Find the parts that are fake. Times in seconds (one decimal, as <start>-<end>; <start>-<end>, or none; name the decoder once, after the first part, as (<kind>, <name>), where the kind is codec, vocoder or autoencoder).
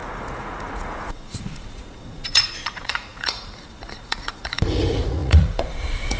0.0-6.2 (vocoder, Vocos)